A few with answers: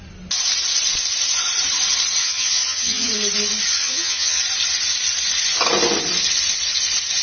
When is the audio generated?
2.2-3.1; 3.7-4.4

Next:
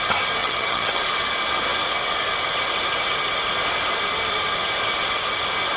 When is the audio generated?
0.4-1.0

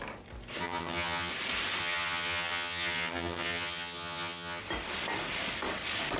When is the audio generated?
0.6-1.3; 1.8-4.6

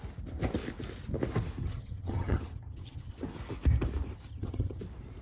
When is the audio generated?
1.6-3.1; 4.3-4.8

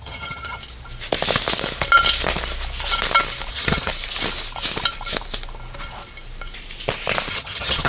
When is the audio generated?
0.0-0.6; 3.5-3.9; 7.3-7.9

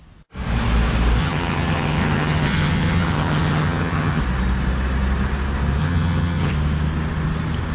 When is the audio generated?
1.2-4.2; 5.8-6.5

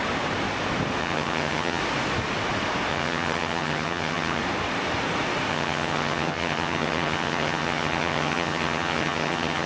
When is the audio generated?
1.0-1.8; 2.9-4.4; 5.5-9.7